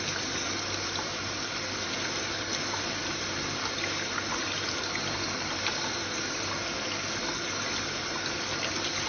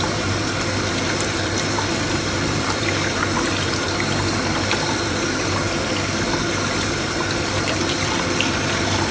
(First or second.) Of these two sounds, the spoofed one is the second